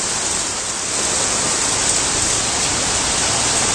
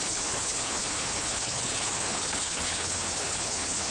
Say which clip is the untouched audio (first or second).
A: first